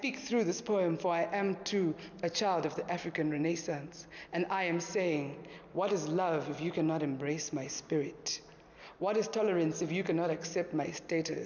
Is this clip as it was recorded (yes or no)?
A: yes